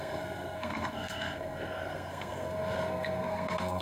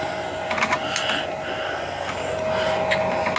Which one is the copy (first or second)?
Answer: first